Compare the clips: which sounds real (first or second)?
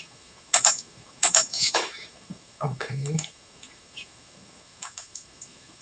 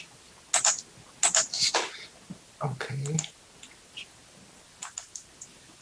second